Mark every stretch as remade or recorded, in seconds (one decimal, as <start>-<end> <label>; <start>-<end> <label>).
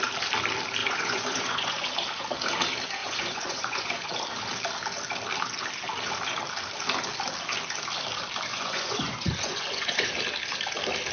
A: 0.0-0.8 recorded; 0.8-1.9 remade; 1.9-3.0 recorded; 3.0-4.1 remade; 4.1-8.5 recorded; 8.5-10.1 remade; 10.1-11.1 recorded